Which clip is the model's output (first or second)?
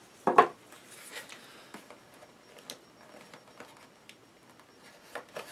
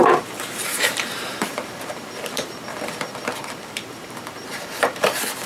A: second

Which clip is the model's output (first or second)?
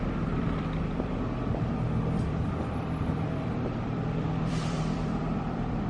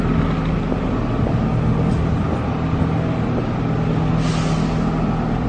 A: first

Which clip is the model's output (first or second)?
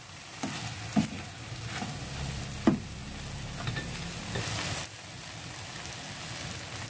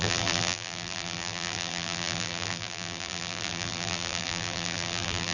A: second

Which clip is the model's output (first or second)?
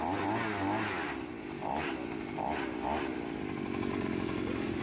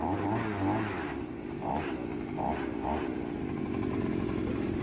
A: second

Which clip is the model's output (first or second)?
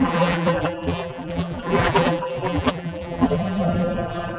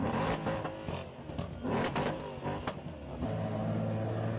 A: first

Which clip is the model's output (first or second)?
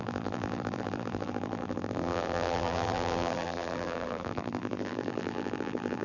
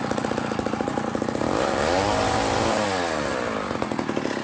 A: first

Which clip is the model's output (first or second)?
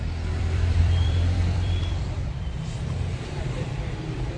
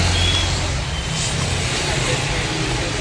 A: first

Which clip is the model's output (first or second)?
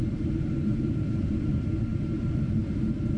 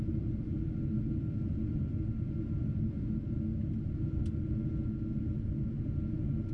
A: first